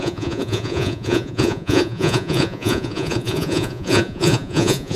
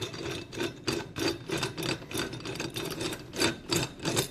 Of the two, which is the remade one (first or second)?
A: first